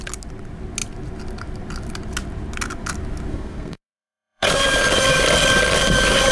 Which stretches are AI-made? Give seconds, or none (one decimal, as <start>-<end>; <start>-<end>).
3.3-4.5